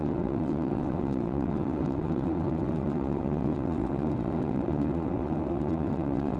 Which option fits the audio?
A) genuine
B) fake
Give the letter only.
B